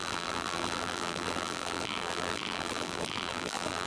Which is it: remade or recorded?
remade